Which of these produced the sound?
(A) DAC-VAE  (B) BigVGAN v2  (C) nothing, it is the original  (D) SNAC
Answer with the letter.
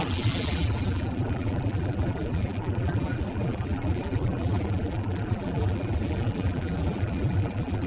B